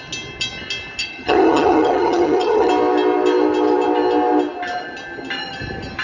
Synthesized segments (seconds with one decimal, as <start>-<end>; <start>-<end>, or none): 1.0-2.7